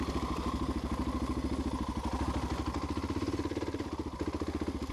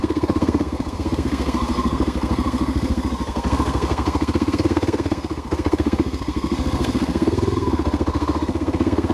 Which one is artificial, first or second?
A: second